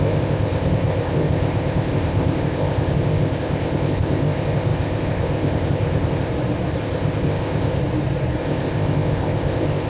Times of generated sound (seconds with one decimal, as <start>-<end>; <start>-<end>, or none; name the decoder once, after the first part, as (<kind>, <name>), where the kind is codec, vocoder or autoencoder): 0.0-6.3 (codec, ZipCodec); 6.8-7.8; 8.4-9.9